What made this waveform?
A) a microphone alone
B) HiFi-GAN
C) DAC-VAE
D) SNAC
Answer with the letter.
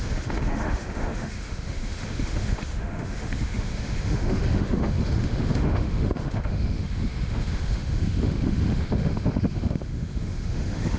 C